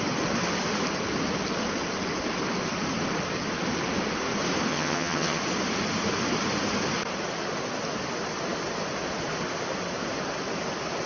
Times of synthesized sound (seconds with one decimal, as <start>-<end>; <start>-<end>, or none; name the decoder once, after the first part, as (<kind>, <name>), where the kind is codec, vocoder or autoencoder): 4.7-5.4 (vocoder, HiFi-GAN)